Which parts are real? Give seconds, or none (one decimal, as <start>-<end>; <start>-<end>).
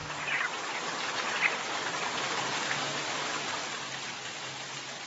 0.0-5.1